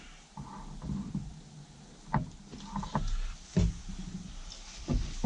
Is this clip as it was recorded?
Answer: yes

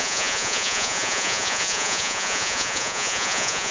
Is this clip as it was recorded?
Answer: no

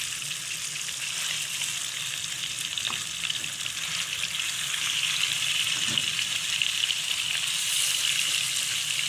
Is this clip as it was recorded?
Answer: yes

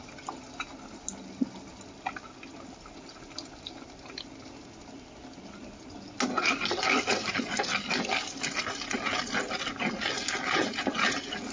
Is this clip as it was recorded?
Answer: yes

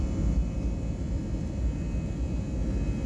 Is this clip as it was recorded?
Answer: yes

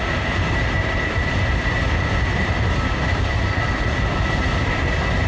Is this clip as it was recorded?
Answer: yes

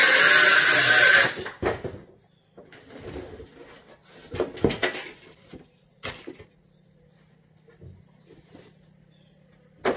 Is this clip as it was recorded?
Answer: yes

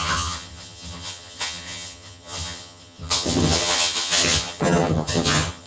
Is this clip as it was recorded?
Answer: no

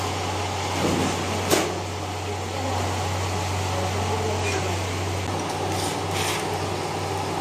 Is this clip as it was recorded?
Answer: yes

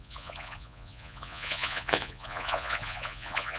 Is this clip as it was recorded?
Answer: no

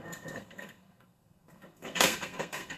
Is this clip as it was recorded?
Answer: no